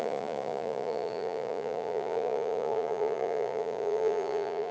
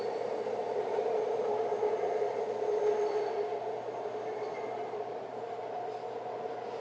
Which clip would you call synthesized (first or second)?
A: first